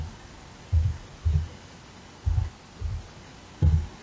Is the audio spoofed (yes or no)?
no